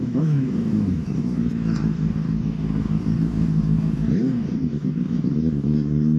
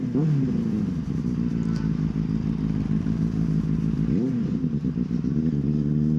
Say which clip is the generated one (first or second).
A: first